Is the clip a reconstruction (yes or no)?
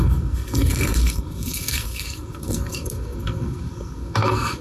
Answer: yes